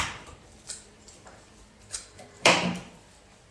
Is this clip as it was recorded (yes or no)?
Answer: no